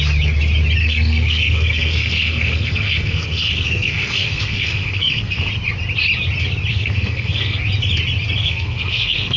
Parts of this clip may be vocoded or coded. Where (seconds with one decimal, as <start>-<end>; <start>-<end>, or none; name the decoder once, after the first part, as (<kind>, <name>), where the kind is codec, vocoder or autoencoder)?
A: 0.8-5.5 (codec, SNAC); 6.7-7.6; 8.4-9.4